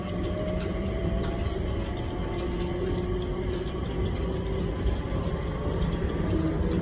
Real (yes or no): yes